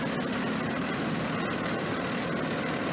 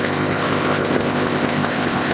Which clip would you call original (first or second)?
first